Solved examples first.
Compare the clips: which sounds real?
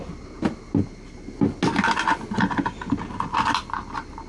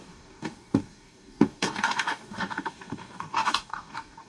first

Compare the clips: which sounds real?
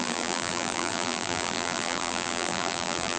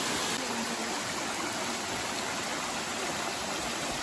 second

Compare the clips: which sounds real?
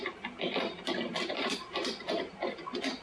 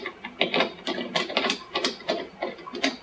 second